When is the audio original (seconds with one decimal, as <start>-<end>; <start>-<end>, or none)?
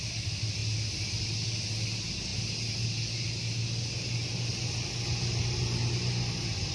0.0-6.7